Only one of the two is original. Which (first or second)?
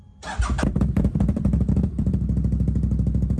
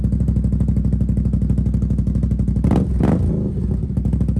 second